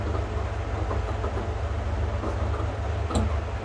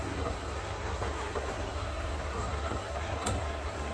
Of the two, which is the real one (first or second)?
first